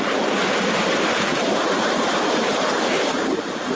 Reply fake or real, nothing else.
real